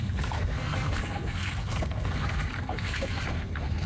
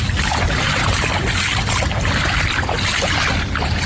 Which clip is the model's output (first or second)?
first